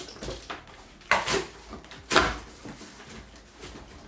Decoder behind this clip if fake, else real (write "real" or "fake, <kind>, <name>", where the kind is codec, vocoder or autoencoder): real